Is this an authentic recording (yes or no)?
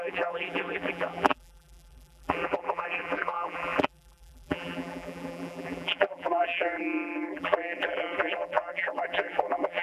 no